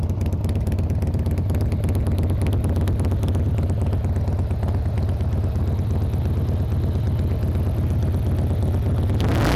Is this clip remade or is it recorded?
recorded